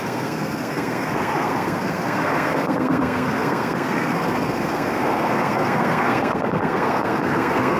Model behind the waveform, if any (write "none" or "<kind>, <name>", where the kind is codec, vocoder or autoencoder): codec, SNAC